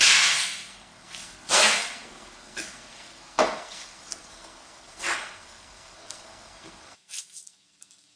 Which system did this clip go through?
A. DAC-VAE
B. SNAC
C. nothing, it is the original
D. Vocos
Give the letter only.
B